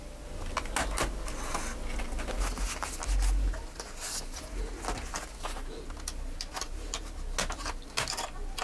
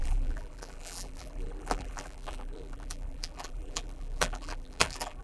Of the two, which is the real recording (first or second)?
first